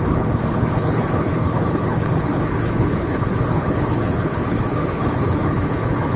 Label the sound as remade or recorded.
remade